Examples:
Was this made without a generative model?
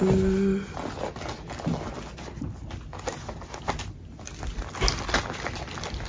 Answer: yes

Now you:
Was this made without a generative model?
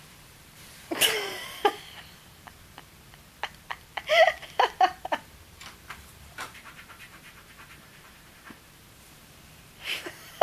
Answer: no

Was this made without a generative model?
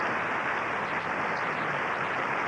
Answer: yes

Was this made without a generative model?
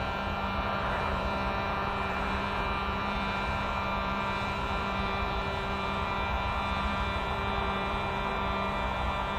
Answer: no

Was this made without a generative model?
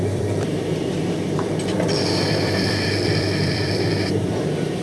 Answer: no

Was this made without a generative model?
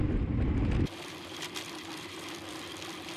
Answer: no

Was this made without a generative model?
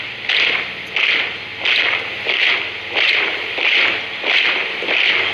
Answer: yes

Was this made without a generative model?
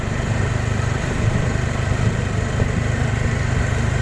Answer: no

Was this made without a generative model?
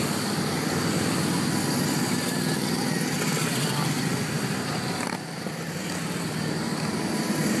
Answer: yes